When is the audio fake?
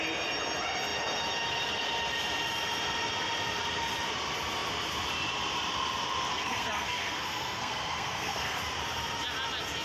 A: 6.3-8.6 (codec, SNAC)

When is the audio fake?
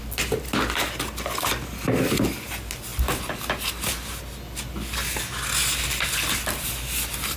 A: none